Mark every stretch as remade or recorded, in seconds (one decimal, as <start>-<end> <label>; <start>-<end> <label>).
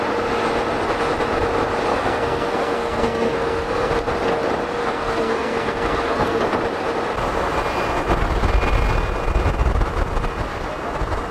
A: 0.0-1.9 recorded; 1.9-3.9 remade; 3.9-4.8 recorded; 4.8-6.4 remade; 6.4-11.3 recorded